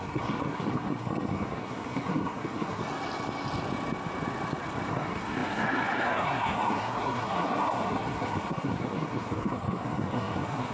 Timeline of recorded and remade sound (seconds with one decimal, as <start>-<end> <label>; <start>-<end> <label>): 0.0-2.8 remade; 2.8-4.9 recorded; 4.9-10.7 remade